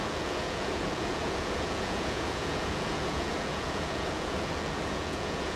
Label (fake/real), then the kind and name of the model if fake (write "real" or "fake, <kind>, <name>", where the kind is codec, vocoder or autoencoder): fake, vocoder, Vocos